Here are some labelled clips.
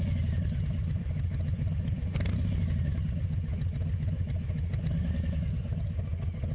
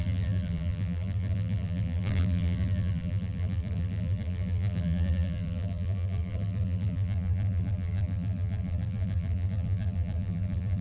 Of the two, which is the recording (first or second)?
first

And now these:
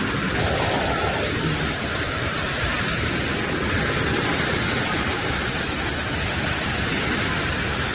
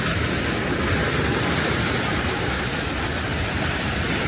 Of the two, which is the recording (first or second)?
second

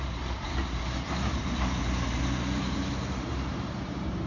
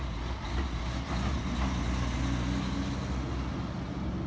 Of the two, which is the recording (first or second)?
second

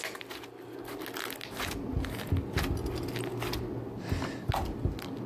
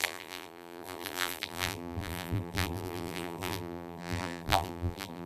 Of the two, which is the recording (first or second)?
first